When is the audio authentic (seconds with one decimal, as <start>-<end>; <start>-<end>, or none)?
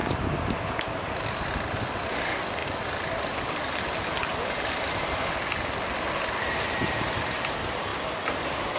0.0-8.8